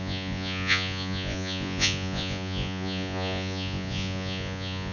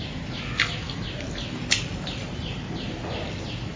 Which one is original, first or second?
second